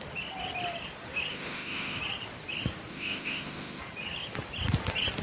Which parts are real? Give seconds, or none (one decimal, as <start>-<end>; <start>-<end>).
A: 0.0-1.3; 2.0-2.9; 3.8-5.2